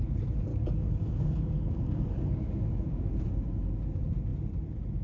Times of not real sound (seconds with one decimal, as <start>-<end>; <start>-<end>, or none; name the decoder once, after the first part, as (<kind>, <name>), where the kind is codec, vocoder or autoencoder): 0.5-3.1 (codec, DAC)

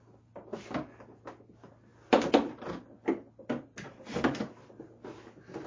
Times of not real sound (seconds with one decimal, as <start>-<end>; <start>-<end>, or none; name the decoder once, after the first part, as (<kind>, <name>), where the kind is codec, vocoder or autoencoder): none

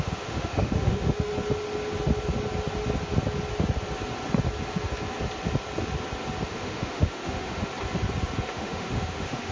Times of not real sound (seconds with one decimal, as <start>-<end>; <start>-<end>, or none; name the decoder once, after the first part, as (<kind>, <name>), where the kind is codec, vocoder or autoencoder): 0.0-1.3 (autoencoder, DAC-VAE); 6.5-7.7; 8.4-9.5